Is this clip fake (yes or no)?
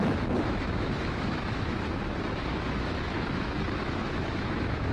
yes